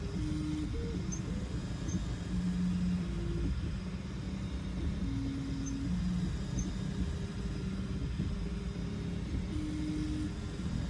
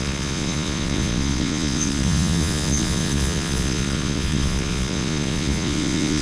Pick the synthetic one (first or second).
second